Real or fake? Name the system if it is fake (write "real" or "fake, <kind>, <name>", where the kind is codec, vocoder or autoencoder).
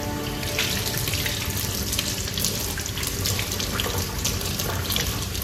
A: real